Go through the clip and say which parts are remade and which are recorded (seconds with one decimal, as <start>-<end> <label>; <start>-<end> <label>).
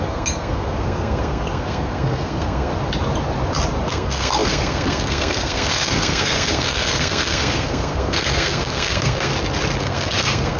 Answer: 0.0-2.7 remade; 2.7-3.9 recorded; 3.9-9.3 remade; 9.3-9.8 recorded; 9.8-10.6 remade